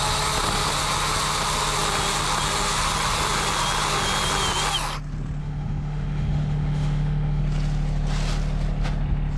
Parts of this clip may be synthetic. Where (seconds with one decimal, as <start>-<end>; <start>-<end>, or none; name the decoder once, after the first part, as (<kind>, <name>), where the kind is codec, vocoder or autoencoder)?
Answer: 5.4-7.4 (autoencoder, DAC-VAE)